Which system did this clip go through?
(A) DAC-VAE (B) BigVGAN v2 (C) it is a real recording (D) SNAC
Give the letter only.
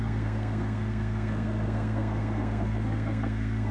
D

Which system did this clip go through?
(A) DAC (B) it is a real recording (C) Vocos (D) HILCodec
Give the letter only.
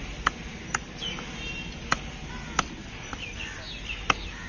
B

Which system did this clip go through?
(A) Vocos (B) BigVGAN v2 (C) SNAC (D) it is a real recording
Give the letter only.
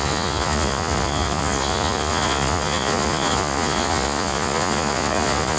A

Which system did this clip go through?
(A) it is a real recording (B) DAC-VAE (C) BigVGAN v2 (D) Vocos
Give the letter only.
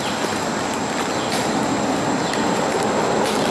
A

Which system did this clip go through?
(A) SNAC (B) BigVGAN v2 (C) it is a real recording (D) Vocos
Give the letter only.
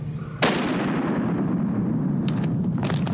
C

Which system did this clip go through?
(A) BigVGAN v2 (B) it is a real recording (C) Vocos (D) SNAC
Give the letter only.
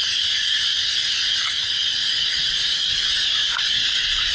A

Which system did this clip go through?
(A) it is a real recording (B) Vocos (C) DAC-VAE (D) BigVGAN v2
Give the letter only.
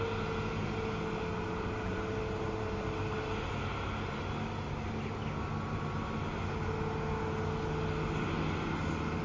A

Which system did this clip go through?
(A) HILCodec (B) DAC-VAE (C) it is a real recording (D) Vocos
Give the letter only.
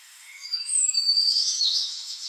B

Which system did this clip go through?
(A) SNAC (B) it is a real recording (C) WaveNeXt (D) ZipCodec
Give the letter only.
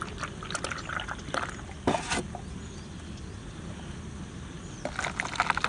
B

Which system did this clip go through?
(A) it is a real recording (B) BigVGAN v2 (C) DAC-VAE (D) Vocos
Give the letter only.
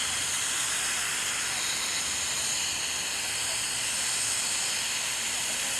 A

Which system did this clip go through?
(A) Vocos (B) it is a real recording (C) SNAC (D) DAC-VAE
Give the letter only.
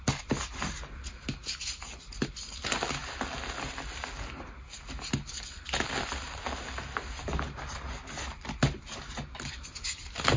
B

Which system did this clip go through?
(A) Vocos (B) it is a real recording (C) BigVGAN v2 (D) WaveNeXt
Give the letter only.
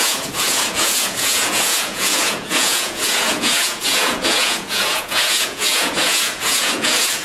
A